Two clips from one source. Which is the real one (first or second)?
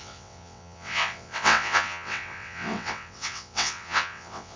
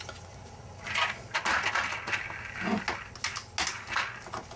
second